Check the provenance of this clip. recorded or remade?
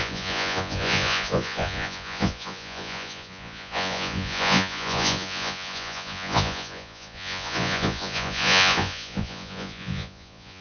remade